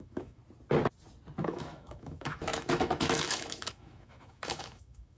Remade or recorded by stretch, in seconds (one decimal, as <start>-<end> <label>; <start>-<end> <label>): 0.0-0.4 remade; 0.4-1.4 recorded; 1.4-5.2 remade